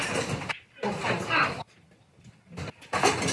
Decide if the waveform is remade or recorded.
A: recorded